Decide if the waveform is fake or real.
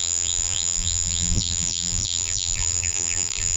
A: fake